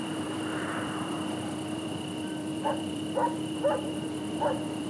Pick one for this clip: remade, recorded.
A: remade